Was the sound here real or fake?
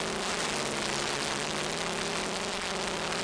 real